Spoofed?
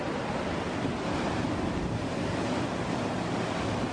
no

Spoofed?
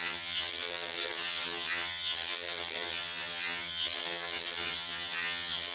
yes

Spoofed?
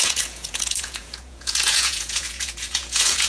yes